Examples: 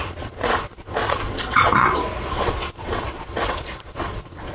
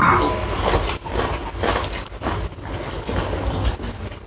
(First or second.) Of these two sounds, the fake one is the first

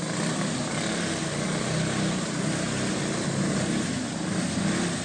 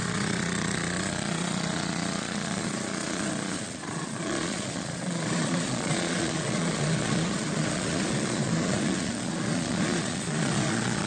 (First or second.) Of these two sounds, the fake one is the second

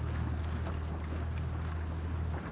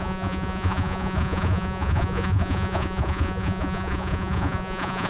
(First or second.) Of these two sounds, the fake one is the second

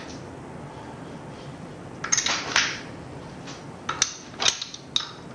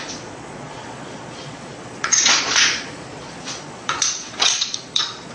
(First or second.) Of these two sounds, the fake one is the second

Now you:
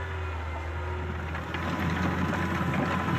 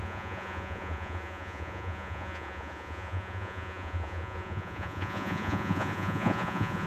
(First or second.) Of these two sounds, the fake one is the second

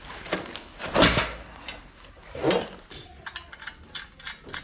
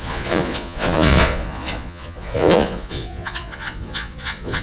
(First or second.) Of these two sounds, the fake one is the second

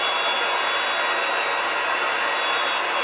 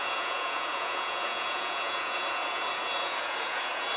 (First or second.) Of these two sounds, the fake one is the second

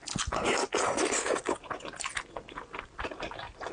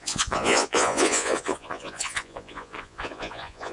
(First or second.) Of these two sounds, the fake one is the second